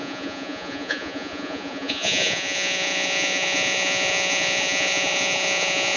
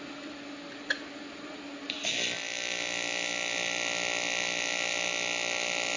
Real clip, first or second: second